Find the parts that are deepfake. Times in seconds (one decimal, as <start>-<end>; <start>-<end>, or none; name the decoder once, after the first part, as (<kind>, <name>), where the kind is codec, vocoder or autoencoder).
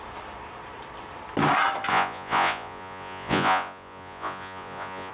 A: 1.9-5.1 (vocoder, Vocos)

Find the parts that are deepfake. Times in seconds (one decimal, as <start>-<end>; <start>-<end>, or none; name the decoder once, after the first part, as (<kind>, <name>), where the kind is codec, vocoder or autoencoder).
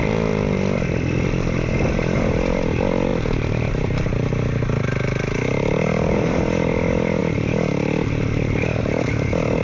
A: none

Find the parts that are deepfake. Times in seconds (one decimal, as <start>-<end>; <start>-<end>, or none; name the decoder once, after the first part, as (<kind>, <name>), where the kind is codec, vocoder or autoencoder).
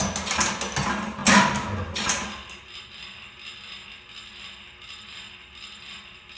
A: none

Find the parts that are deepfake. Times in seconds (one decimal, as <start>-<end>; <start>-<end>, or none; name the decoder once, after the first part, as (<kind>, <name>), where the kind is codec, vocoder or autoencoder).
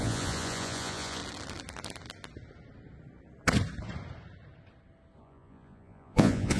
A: 0.0-1.2 (vocoder, Vocos); 5.2-6.6